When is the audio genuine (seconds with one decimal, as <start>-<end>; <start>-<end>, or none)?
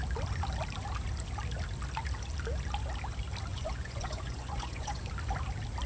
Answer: 0.0-3.5; 5.0-5.9